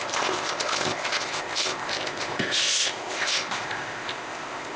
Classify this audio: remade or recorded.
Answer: remade